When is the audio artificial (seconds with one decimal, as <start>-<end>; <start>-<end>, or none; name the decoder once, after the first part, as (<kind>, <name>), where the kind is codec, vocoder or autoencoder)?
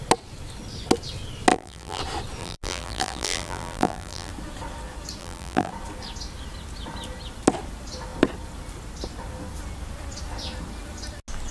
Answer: 1.5-2.0 (vocoder, BigVGAN v2); 2.4-4.3; 5.2-5.7